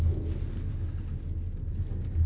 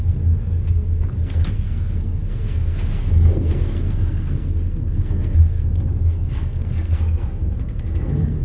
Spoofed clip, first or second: second